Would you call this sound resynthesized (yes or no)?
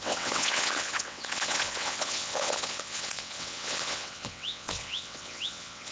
yes